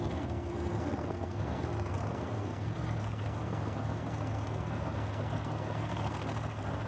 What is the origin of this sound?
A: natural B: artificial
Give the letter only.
B